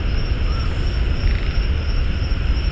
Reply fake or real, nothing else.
real